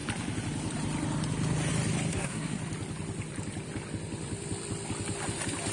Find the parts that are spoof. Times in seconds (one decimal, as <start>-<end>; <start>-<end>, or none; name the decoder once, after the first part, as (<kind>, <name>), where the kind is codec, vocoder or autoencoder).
2.1-2.6 (codec, SNAC)